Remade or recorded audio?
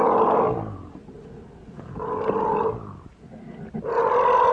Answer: recorded